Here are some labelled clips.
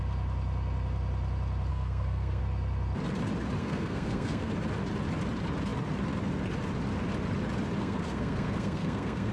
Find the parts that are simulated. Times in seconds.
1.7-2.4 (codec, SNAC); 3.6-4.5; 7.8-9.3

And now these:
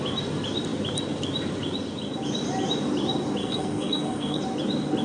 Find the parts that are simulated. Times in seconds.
3.4-4.4 (codec, SNAC)

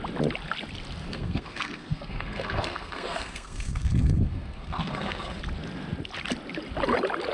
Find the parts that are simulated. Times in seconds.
1.0-5.4 (codec, SNAC)

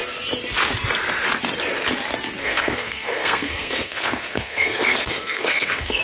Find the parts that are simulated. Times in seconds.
2.4-6.0 (codec, SNAC)

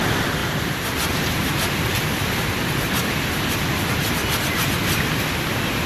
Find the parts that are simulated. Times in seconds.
none